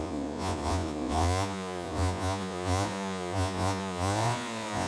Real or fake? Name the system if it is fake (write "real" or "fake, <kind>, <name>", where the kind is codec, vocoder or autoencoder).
fake, vocoder, Vocos